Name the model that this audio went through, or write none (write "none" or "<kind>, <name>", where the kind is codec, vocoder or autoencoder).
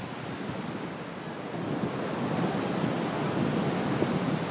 none